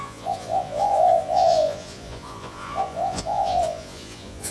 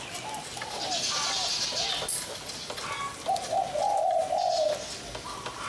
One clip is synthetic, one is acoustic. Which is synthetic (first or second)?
first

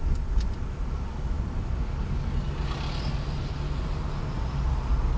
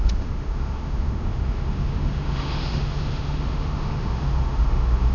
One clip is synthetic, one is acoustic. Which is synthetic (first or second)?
second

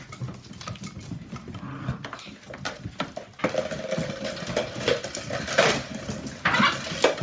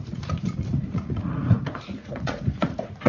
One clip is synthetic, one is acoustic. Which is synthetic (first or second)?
second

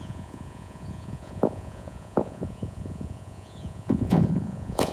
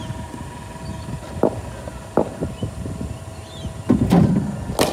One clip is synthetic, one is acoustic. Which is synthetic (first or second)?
first